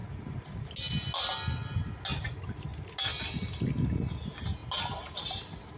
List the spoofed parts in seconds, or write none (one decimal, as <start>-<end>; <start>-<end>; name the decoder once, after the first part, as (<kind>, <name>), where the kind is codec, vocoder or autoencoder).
0.0-0.6 (vocoder, BigVGAN v2); 3.1-3.7